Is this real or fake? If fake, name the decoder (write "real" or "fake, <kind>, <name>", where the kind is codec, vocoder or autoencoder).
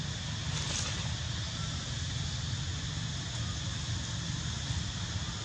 real